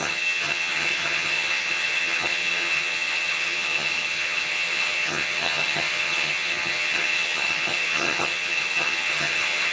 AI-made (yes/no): yes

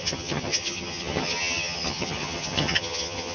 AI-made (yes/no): yes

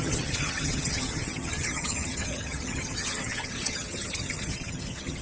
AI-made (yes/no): yes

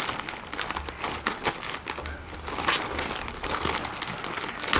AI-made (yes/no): no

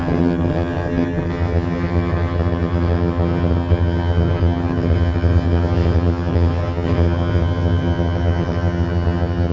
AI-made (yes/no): yes